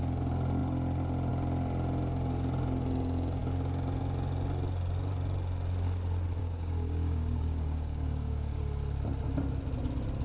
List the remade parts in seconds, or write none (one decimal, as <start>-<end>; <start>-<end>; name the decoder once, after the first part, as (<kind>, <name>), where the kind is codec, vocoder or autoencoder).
6.4-8.6 (codec, DAC)